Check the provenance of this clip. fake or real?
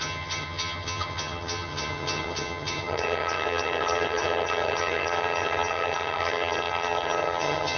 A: fake